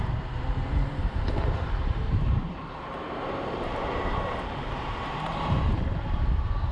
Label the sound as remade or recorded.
remade